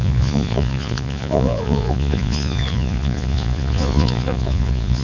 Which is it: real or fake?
fake